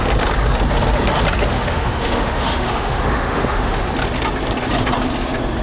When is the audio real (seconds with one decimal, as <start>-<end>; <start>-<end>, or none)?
0.0-1.5; 3.8-5.6